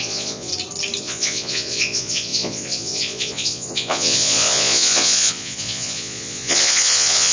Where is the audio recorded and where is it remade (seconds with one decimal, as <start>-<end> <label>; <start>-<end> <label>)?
0.0-0.5 remade; 0.5-1.0 recorded; 1.0-7.3 remade